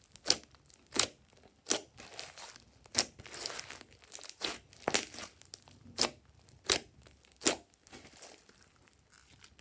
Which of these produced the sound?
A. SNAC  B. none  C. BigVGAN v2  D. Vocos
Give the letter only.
B